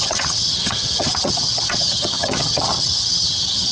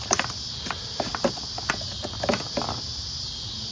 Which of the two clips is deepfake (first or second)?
first